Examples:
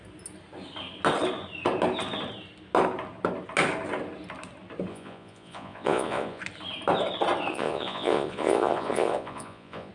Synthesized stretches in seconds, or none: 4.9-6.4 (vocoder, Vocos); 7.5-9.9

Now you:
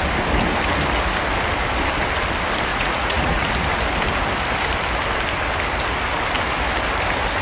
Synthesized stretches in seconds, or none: 2.7-3.5 (vocoder, Vocos)

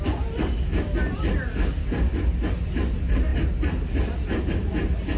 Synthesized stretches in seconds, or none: none

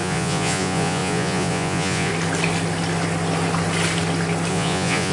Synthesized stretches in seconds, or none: 0.0-2.1 (vocoder, Vocos); 4.5-5.1

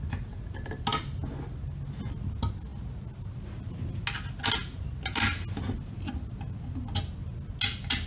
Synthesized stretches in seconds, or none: none

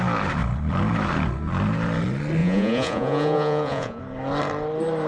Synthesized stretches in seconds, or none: 2.4-4.0 (vocoder, Vocos)

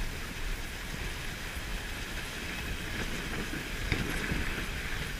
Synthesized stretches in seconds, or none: none

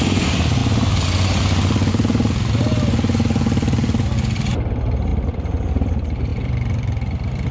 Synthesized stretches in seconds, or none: none